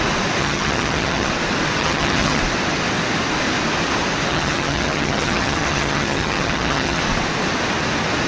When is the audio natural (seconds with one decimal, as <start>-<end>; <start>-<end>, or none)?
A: 0.0-0.4; 1.3-1.8; 2.4-4.3; 7.0-8.3